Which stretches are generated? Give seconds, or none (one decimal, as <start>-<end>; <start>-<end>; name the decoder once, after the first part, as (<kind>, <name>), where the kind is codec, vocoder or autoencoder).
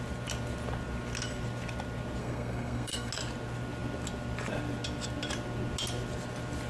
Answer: 2.2-3.1 (codec, SNAC)